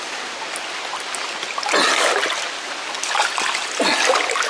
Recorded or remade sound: recorded